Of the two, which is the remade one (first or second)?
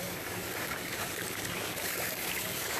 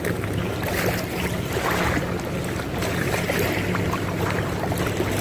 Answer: first